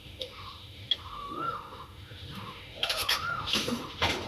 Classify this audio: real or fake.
fake